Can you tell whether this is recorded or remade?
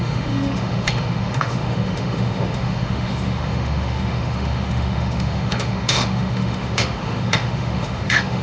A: remade